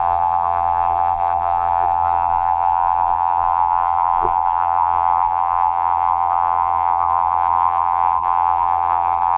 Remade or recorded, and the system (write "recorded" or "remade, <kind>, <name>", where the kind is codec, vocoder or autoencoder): remade, vocoder, BigVGAN v2